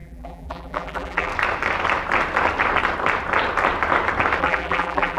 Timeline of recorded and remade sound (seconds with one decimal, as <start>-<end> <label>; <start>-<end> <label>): 0.0-1.3 remade; 1.3-4.4 recorded; 4.4-5.2 remade